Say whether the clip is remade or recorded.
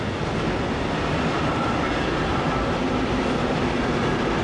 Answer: recorded